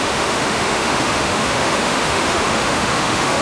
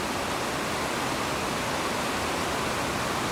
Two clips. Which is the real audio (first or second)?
second